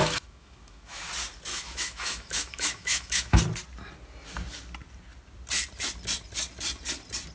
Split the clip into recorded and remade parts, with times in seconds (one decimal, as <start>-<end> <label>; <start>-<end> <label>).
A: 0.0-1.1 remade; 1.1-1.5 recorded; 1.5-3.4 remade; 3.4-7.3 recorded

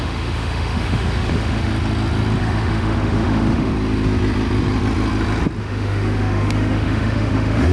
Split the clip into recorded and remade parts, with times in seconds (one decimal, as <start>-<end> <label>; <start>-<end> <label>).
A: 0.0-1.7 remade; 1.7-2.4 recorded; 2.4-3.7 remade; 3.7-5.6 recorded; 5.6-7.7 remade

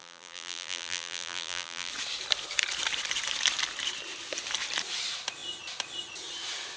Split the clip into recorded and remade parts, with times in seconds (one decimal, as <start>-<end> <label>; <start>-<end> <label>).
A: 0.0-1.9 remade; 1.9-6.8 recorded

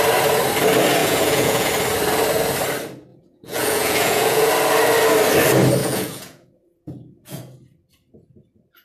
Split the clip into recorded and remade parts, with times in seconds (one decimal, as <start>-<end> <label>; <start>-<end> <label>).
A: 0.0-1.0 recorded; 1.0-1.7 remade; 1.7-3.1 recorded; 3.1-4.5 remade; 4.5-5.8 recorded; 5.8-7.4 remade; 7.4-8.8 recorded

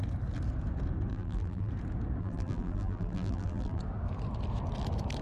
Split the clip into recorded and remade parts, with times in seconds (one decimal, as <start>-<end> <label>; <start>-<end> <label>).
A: 0.0-1.1 recorded; 1.1-1.7 remade; 1.7-2.2 recorded; 2.2-3.8 remade; 3.8-5.2 recorded